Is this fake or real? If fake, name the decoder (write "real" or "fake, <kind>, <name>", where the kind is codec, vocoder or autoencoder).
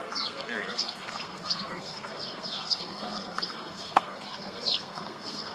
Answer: fake, codec, SNAC